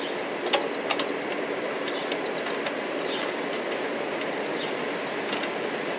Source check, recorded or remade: recorded